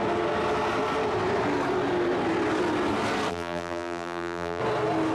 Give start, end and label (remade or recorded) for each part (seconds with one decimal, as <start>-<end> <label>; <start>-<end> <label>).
0.0-3.3 recorded; 3.3-4.6 remade; 4.6-5.1 recorded